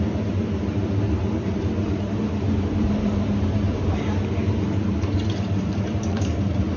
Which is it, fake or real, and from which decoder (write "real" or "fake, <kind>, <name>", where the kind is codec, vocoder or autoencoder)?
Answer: fake, vocoder, BigVGAN v2